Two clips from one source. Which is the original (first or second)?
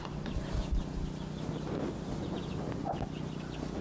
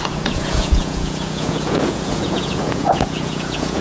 first